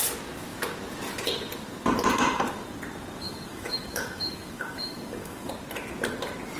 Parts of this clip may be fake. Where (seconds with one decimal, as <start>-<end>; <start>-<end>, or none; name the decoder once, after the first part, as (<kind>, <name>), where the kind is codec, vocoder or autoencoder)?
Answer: 3.2-5.5 (codec, DAC)